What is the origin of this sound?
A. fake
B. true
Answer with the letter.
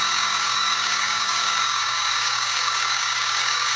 A